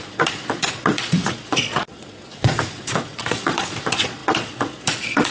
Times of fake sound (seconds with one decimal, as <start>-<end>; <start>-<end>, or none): 0.0-5.3

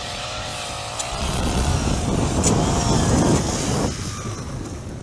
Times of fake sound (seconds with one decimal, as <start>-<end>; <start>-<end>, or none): 0.0-0.5; 1.2-1.7

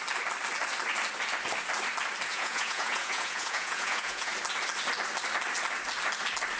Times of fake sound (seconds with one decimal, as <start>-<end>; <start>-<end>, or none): 2.3-4.3